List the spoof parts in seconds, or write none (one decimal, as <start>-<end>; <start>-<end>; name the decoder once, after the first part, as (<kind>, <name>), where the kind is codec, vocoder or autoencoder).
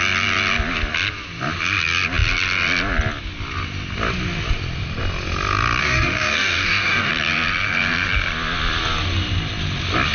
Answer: 5.8-7.1 (codec, DAC)